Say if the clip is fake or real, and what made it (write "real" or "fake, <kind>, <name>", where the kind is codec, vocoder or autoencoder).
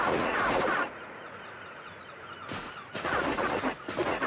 fake, vocoder, Vocos